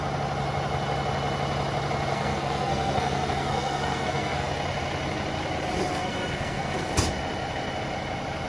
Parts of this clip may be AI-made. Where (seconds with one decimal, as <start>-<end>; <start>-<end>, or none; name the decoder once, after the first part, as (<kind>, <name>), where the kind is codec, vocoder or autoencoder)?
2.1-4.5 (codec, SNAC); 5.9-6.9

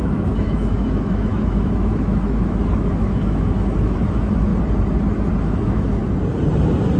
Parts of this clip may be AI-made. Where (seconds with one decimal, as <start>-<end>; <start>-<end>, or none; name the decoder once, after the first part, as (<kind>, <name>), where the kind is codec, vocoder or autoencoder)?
0.0-4.5 (autoencoder, DAC-VAE); 5.4-6.0

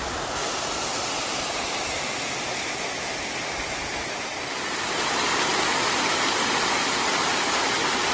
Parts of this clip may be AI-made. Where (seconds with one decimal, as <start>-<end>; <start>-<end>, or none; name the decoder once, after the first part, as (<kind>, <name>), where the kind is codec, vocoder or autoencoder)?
none